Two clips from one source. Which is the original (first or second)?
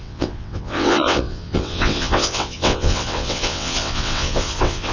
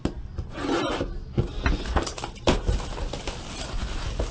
second